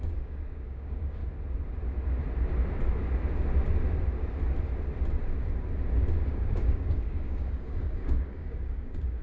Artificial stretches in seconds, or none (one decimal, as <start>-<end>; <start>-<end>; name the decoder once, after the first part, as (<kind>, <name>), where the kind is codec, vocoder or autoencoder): 0.0-1.2 (codec, DAC); 6.3-9.2